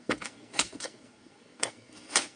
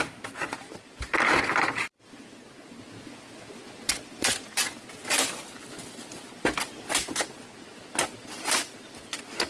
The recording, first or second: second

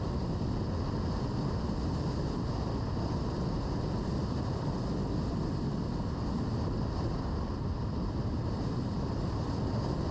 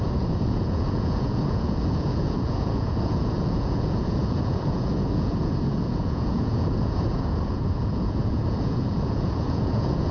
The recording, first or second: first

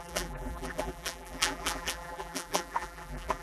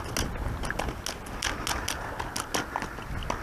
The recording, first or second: second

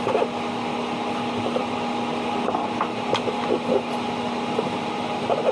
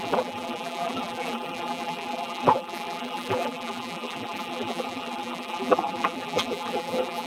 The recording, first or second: first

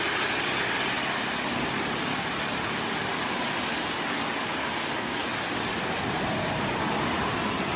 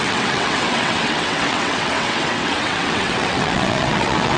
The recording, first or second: first